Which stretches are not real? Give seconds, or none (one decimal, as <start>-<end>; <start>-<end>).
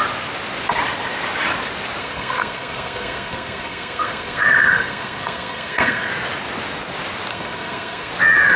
2.0-6.1; 7.3-8.1